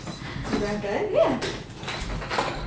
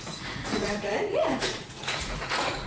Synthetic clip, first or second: second